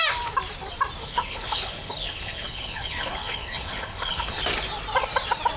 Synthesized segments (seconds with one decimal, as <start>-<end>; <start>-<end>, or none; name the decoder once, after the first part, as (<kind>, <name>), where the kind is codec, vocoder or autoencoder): 1.0-4.4 (codec, HILCodec)